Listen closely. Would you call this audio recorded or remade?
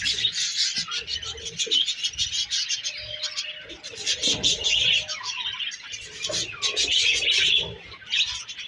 recorded